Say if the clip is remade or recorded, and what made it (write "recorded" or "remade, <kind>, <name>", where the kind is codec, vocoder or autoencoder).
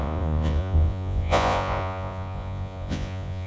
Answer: remade, vocoder, Vocos